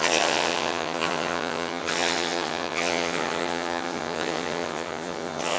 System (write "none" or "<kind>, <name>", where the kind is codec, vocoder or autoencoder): vocoder, HiFi-GAN